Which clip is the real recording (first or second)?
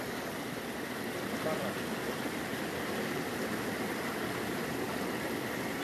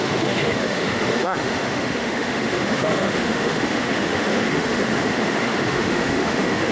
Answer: first